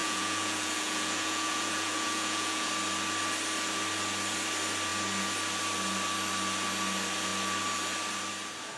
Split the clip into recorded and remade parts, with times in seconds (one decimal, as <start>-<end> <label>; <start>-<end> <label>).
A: 0.0-2.7 remade; 2.7-8.8 recorded

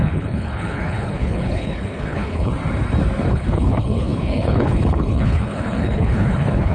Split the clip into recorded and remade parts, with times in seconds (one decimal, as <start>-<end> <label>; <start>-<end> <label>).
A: 0.0-2.5 remade; 2.5-3.3 recorded; 3.3-6.7 remade